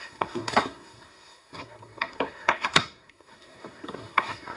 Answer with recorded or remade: remade